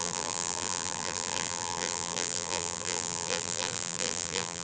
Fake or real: fake